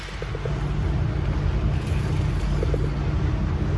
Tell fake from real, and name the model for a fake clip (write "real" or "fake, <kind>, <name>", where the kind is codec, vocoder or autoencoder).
real